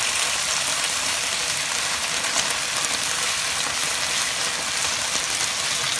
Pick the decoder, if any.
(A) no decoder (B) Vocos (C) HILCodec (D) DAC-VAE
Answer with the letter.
A